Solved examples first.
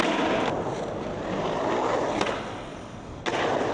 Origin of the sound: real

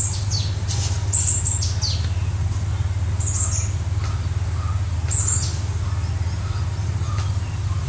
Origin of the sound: real